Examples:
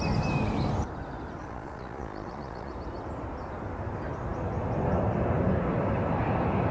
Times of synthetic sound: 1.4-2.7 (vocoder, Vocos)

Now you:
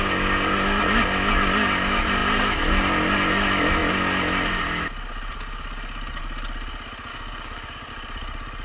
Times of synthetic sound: 7.1-7.9 (codec, DAC)

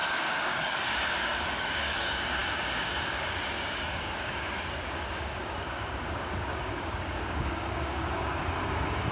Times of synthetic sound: 0.0-9.1 (codec, DAC)

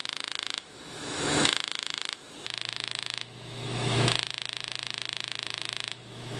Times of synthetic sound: 0.0-6.4 (autoencoder, DAC-VAE)

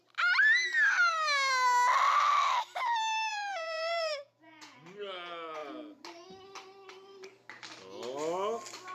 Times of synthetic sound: 3.3-4.8 (vocoder, Vocos)